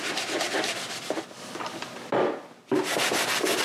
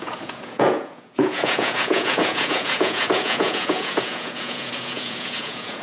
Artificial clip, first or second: second